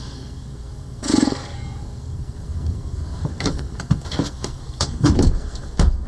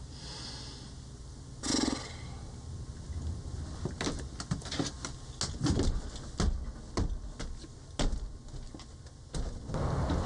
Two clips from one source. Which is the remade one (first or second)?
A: first